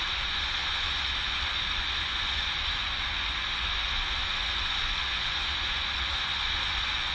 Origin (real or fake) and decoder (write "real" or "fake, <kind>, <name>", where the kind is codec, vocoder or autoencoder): fake, vocoder, Vocos